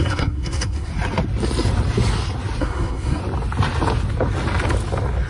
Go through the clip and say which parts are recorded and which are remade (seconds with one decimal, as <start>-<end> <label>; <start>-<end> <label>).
0.0-0.9 remade; 0.9-2.6 recorded; 2.6-3.2 remade; 3.2-5.3 recorded